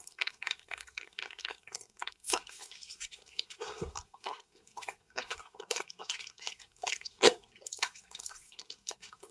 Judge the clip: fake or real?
fake